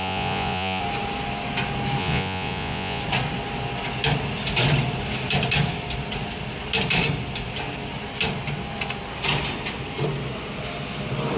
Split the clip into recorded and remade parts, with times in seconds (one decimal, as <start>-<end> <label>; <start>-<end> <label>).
0.0-0.8 remade; 0.8-2.0 recorded; 2.0-3.0 remade; 3.0-11.4 recorded